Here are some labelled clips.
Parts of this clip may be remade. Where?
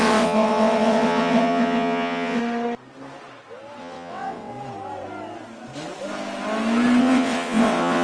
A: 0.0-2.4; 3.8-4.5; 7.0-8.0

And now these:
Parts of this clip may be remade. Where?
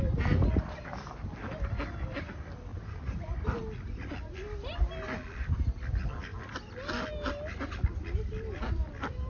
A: 2.7-3.2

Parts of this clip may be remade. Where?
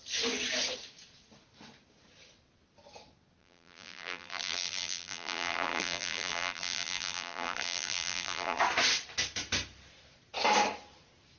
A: 3.4-8.6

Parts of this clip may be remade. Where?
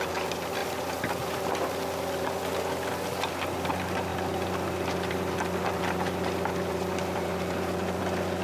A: 0.6-2.4; 4.1-8.0